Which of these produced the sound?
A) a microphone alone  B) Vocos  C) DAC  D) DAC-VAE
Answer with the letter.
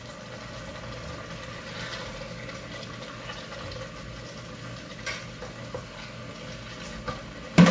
A